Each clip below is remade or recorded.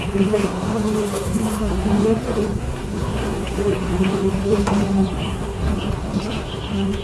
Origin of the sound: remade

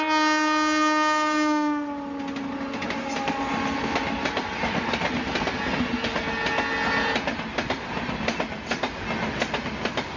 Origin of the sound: recorded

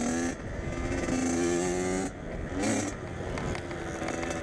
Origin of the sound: recorded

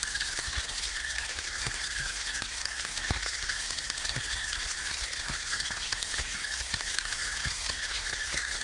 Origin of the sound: remade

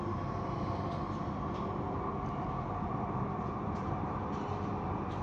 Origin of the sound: recorded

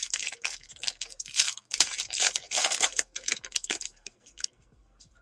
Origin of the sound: remade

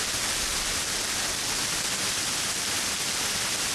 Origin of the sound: recorded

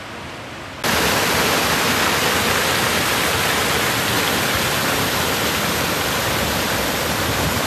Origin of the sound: recorded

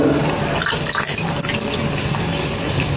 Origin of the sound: recorded